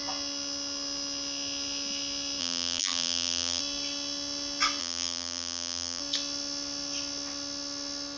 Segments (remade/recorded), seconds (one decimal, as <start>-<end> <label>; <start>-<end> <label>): 0.0-2.4 recorded; 2.4-3.6 remade; 3.6-4.8 recorded; 4.8-6.0 remade; 6.0-8.2 recorded